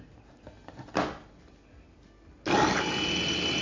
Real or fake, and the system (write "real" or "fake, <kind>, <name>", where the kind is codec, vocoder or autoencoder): real